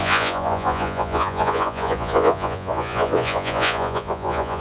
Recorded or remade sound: remade